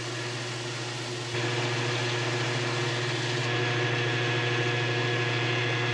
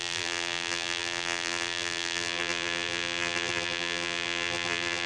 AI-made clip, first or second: second